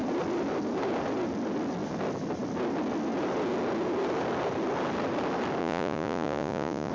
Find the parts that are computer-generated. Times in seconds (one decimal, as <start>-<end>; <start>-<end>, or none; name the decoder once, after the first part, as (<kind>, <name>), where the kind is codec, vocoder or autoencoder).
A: 5.6-6.9 (vocoder, Vocos)